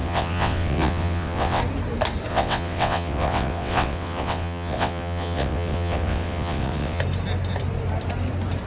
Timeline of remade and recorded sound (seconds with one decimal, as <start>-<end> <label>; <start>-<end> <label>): 0.0-1.6 remade; 1.6-2.3 recorded; 2.3-7.0 remade; 7.0-8.7 recorded